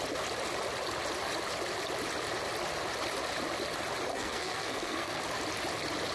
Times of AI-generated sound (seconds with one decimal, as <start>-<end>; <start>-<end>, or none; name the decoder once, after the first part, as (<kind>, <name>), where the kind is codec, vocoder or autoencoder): 4.1-5.2 (codec, SNAC)